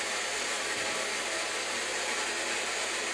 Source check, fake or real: real